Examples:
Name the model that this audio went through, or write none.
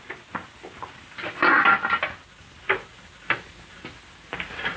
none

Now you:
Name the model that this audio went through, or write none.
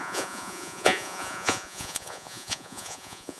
vocoder, Vocos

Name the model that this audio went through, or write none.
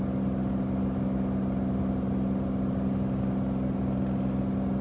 none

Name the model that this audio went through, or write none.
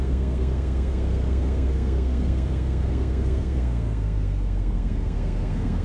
codec, SNAC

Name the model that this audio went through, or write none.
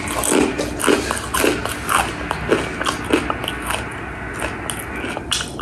none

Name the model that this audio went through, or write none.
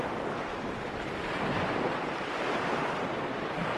none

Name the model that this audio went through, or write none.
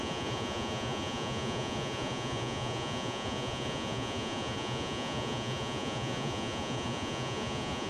vocoder, Vocos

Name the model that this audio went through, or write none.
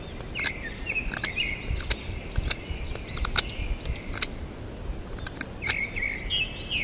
none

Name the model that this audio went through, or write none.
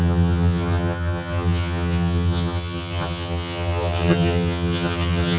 vocoder, HiFi-GAN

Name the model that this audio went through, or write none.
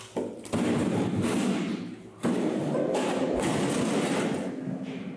none